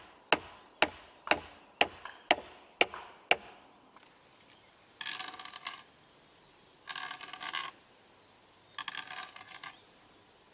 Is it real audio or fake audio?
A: real